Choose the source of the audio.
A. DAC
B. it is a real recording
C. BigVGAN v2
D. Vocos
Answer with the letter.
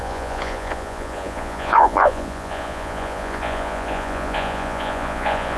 D